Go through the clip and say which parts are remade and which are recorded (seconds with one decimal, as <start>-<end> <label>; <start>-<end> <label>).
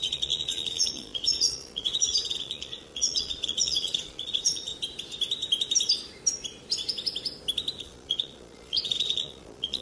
0.0-4.7 remade; 4.7-7.8 recorded; 7.8-9.8 remade